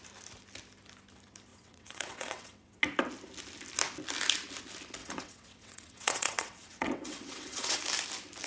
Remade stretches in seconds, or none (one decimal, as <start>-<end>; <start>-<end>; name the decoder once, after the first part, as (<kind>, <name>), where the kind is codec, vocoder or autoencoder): 1.5-2.8 (vocoder, WaveNeXt); 5.0-7.8